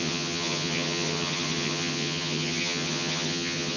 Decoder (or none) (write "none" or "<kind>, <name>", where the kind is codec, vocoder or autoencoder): vocoder, HiFi-GAN